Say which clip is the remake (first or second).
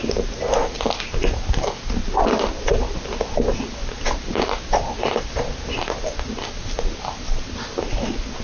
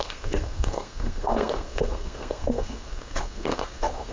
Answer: second